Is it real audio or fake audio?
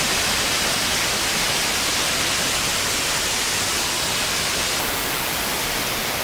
real